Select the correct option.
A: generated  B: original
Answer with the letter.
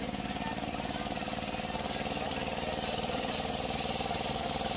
B